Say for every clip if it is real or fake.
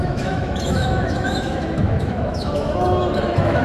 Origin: fake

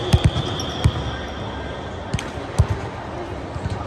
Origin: real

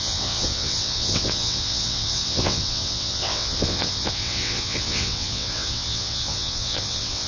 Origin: fake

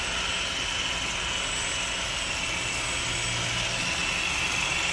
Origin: real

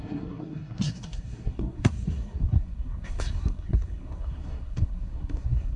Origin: fake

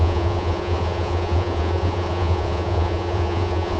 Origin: fake